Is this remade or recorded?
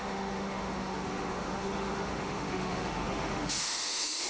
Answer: remade